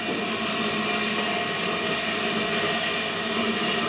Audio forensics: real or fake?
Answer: real